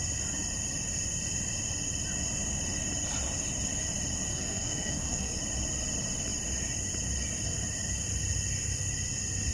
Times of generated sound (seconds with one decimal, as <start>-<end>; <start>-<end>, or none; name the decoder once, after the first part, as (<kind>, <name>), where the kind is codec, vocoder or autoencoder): 4.3-5.4 (codec, SNAC)